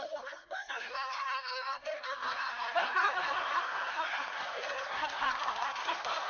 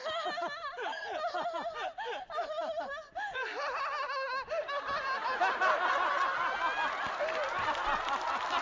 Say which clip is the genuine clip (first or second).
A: second